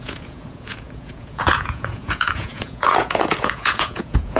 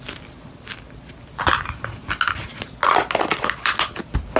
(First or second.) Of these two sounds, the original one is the second